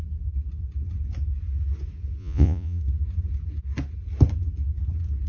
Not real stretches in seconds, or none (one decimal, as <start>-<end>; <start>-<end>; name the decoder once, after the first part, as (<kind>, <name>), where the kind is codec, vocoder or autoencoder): 2.2-2.8 (vocoder, Vocos)